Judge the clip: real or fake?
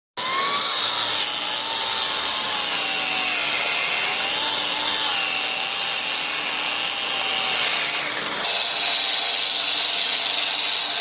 real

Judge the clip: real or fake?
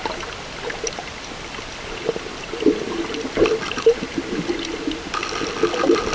real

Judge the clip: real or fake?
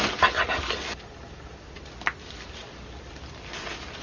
real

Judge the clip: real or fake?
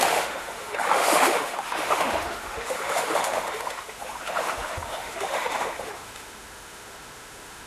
fake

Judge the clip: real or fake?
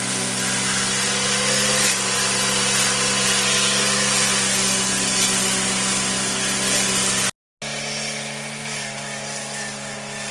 real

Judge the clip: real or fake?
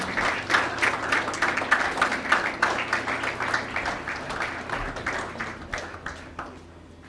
real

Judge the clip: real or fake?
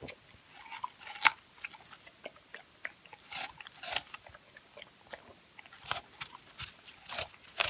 real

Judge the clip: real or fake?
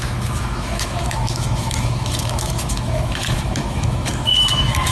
fake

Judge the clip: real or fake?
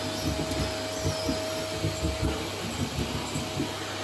real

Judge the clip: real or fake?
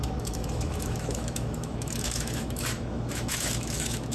fake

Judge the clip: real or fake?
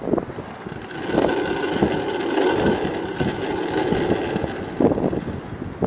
real